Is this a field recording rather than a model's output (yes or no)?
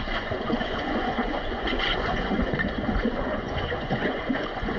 no